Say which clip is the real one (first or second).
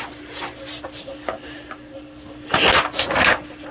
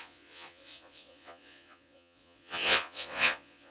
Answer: first